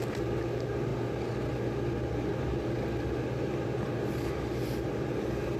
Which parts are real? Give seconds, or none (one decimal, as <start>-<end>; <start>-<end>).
0.0-5.6